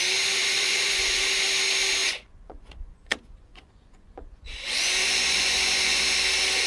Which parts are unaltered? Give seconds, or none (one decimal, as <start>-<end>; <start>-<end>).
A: 0.0-0.4; 1.2-2.0; 6.0-6.7